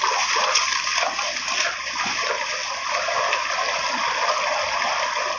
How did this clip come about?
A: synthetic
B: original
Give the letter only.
B